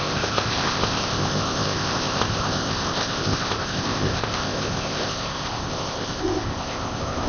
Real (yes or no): no